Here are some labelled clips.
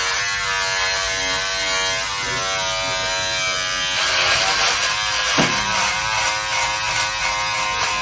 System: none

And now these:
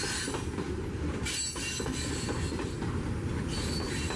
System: none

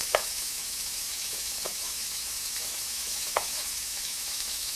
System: autoencoder, DAC-VAE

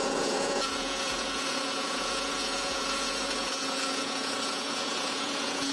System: vocoder, Vocos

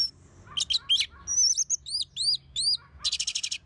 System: none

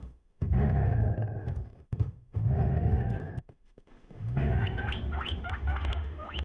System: autoencoder, DAC-VAE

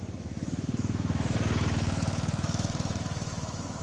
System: autoencoder, DAC-VAE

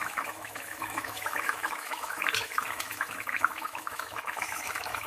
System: autoencoder, DAC-VAE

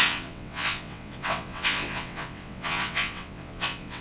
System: vocoder, WaveNeXt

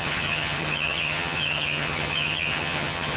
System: vocoder, HiFi-GAN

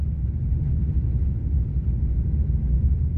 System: none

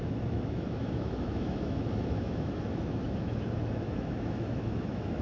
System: autoencoder, DAC-VAE